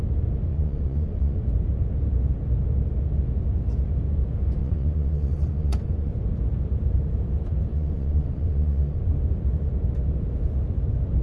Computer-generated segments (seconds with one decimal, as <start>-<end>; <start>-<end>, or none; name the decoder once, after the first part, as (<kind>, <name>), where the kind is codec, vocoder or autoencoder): 0.5-1.4 (vocoder, Vocos); 4.6-6.1; 7.7-9.0